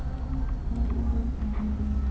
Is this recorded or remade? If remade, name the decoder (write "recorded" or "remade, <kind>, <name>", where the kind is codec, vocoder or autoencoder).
recorded